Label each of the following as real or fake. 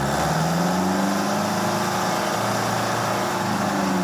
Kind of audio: real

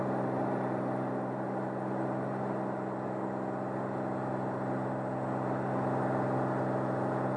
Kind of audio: real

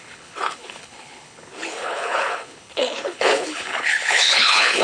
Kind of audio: fake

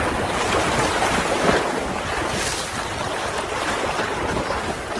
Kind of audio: fake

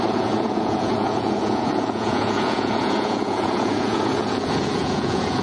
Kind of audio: fake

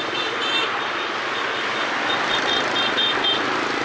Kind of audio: real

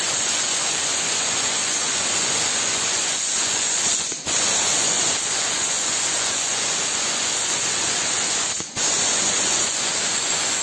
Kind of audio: fake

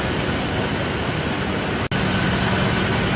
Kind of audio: real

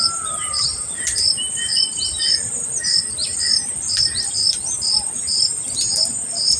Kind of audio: real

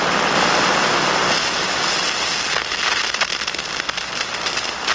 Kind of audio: real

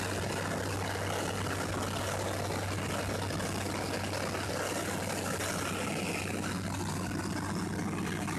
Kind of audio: real